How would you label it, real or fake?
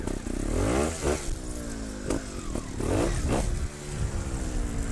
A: real